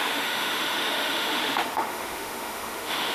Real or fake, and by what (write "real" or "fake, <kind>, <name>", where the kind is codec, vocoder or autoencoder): fake, autoencoder, DAC-VAE